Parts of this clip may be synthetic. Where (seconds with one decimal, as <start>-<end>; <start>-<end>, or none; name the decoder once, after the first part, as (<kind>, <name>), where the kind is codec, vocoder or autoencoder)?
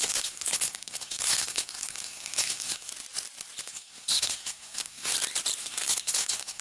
0.0-2.9 (codec, SNAC); 3.6-5.1; 5.6-6.6